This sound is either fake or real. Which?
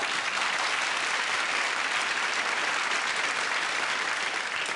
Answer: fake